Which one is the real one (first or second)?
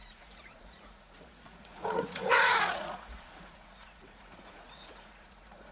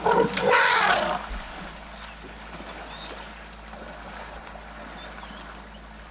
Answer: second